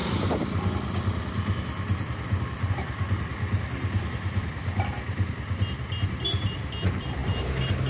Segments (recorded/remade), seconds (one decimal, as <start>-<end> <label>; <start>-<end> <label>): 0.0-2.7 recorded; 2.7-7.2 remade; 7.2-7.9 recorded